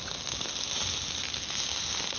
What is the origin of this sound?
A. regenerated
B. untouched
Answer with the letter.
B